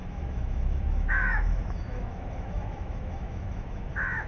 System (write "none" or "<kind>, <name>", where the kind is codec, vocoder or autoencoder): autoencoder, DAC-VAE